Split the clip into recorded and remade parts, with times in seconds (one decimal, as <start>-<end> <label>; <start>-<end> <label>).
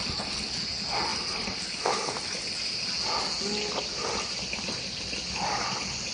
0.0-6.1 recorded